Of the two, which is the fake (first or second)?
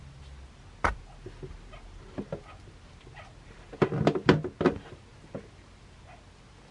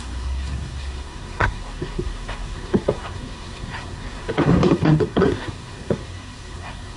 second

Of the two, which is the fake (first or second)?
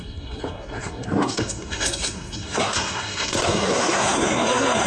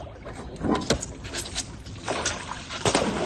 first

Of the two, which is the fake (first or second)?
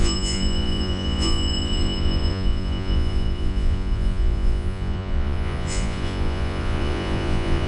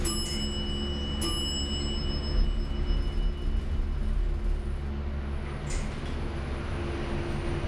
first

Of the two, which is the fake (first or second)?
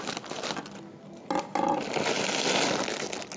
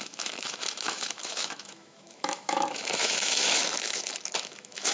second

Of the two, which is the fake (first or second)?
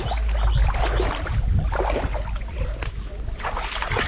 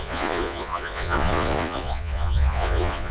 second